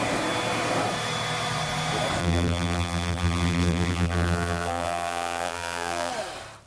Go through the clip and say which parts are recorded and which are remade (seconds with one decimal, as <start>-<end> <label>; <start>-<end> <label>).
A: 0.0-2.2 recorded; 2.2-6.1 remade; 6.1-6.7 recorded